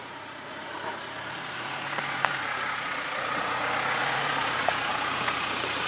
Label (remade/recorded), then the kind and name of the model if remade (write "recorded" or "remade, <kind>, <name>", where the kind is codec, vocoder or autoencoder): remade, vocoder, Vocos